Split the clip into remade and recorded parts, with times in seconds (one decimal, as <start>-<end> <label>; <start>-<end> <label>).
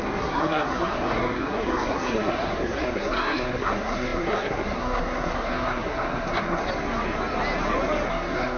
0.0-6.6 remade; 6.6-8.1 recorded; 8.1-8.6 remade